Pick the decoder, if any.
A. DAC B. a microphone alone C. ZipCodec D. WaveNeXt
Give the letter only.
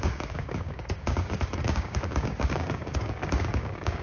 A